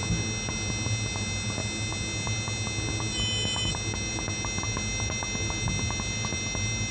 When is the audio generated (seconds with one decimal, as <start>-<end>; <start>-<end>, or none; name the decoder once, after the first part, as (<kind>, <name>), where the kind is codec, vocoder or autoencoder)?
none